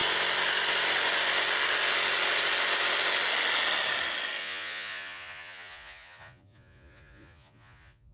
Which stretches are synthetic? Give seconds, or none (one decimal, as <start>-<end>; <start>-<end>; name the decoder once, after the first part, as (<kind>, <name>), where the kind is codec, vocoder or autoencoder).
4.4-8.1 (vocoder, Vocos)